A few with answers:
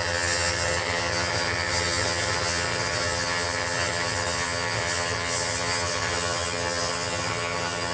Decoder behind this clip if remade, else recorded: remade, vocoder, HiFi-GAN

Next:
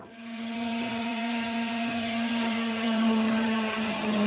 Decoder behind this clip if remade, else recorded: remade, vocoder, HiFi-GAN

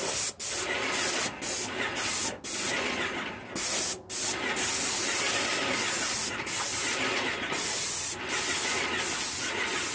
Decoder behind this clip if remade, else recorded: recorded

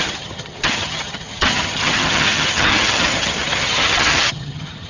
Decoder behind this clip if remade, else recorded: remade, vocoder, HiFi-GAN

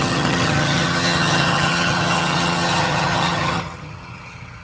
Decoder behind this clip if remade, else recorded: remade, vocoder, HiFi-GAN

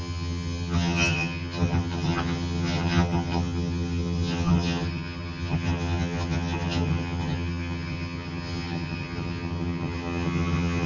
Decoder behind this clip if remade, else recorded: remade, vocoder, HiFi-GAN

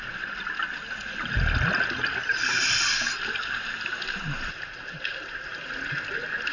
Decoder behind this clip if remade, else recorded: recorded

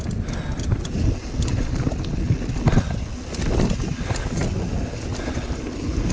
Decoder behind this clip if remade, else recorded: recorded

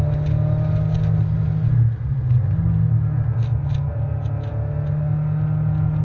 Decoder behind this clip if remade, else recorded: recorded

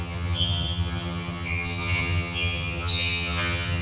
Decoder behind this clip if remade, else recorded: remade, vocoder, HiFi-GAN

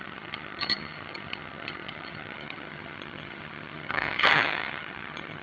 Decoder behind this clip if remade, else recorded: remade, vocoder, HiFi-GAN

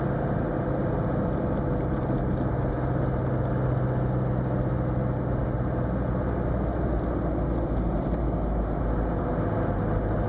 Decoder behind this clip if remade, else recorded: recorded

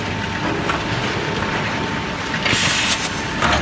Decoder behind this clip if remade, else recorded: recorded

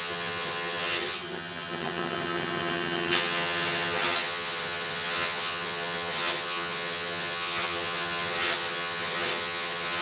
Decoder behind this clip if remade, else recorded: remade, vocoder, HiFi-GAN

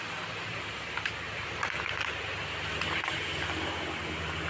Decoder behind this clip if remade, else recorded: recorded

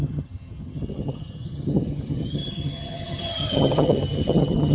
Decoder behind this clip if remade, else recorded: remade, vocoder, HiFi-GAN